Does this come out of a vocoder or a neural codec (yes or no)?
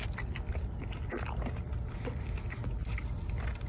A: no